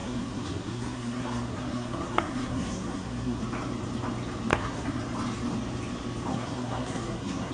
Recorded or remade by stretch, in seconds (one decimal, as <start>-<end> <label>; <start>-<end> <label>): 0.0-3.4 remade; 3.4-4.5 recorded; 4.5-5.0 remade; 5.0-6.3 recorded; 6.3-7.5 remade